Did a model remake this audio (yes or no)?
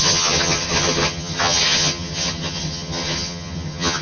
yes